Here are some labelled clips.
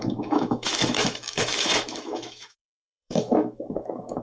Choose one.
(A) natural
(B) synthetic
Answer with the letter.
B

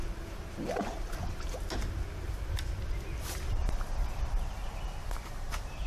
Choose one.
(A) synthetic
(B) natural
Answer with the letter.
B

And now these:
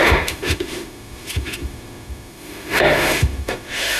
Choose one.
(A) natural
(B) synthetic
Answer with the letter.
B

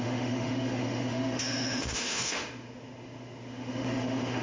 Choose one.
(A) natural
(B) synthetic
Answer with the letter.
B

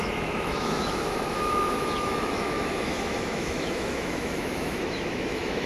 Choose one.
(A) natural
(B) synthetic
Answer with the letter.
B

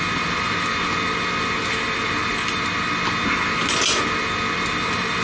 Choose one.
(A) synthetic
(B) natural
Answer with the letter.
B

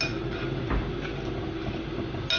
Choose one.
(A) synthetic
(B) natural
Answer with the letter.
B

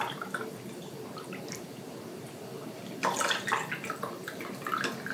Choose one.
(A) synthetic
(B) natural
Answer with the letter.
B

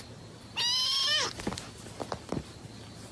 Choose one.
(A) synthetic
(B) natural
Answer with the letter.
B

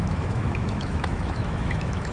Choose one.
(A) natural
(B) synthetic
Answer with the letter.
B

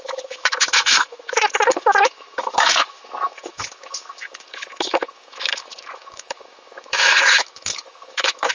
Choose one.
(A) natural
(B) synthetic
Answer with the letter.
B